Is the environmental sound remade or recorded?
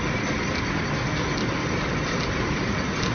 recorded